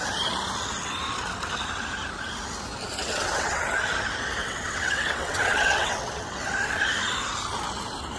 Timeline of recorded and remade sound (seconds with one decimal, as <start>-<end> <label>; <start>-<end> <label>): 0.0-3.0 recorded; 3.0-3.6 remade; 3.6-4.4 recorded; 4.4-6.4 remade; 6.4-8.2 recorded